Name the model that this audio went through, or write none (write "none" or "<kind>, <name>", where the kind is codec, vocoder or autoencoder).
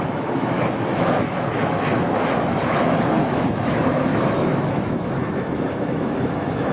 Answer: autoencoder, DAC-VAE